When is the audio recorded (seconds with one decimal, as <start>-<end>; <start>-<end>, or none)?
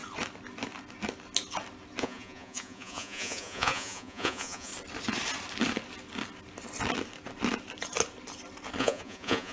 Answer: 0.0-2.0; 4.7-8.8